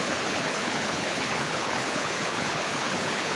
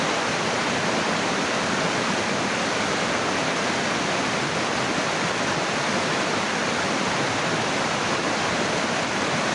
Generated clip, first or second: first